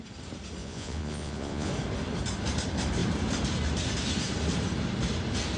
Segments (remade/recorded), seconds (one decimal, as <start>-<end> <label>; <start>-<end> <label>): 0.0-0.6 recorded; 0.6-1.7 remade; 1.7-5.6 recorded